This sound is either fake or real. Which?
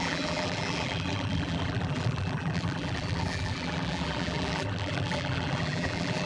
fake